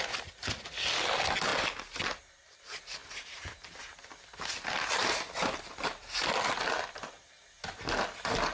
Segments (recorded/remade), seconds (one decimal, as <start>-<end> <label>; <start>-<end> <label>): 0.0-8.5 recorded